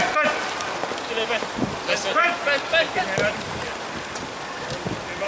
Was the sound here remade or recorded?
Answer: recorded